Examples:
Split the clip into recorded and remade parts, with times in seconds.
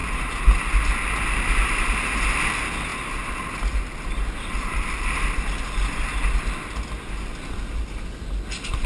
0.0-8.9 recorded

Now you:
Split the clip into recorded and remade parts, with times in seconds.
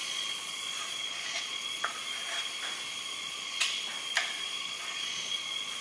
0.0-2.0 remade; 2.0-3.2 recorded; 3.2-3.9 remade; 3.9-4.6 recorded; 4.6-5.8 remade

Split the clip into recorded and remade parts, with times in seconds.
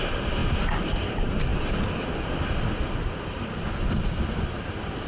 0.0-1.5 remade; 1.5-4.6 recorded; 4.6-5.1 remade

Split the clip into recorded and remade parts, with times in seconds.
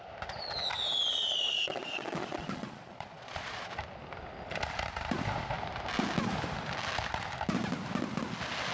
0.0-1.2 recorded; 1.2-3.8 remade; 3.8-8.7 recorded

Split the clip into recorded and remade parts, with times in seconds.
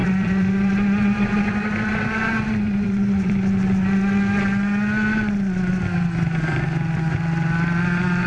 0.0-3.3 remade; 3.3-8.3 recorded